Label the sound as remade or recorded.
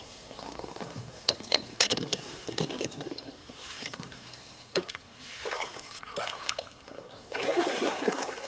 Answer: remade